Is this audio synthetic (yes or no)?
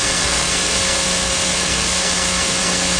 yes